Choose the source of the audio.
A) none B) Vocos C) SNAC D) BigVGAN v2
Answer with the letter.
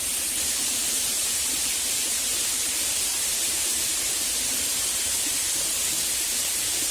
A